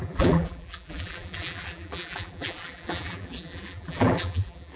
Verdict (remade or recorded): remade